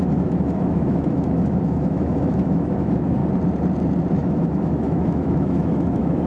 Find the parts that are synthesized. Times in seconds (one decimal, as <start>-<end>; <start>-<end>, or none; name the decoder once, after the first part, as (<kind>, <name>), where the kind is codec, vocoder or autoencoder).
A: 0.0-3.2 (autoencoder, DAC-VAE); 4.1-6.3